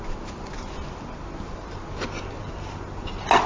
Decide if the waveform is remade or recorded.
recorded